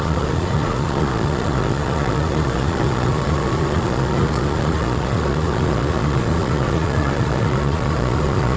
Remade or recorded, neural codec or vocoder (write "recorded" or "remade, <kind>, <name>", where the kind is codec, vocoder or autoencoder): remade, vocoder, Vocos